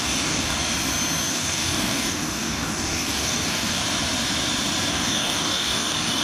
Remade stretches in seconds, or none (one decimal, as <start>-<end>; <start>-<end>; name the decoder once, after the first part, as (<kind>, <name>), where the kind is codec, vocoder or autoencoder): 0.0-0.6 (codec, DAC); 1.3-3.8; 4.9-6.2